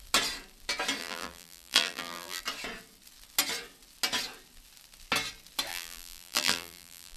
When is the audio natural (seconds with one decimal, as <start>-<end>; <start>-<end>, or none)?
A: 0.0-1.0; 2.4-5.7